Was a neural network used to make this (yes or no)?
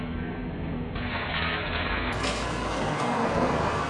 yes